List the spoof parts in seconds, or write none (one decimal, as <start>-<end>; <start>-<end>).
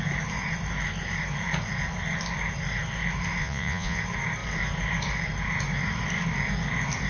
3.4-4.0